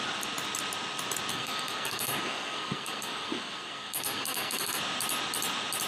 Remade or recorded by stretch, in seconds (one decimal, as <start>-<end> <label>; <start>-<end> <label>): 0.0-1.3 recorded; 1.3-4.8 remade; 4.8-5.9 recorded